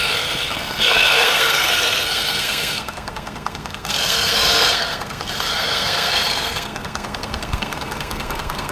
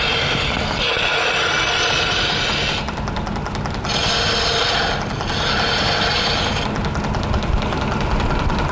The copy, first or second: first